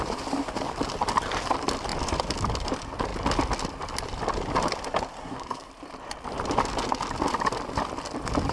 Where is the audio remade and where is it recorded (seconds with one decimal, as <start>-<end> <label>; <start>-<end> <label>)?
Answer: 0.0-5.2 recorded; 5.2-5.7 remade; 5.7-8.5 recorded